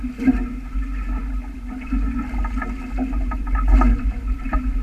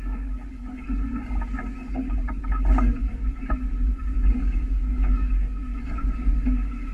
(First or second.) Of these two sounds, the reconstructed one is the second